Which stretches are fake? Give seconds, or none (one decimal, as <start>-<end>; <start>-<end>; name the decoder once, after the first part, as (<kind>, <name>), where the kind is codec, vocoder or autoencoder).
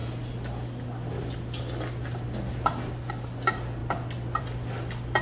none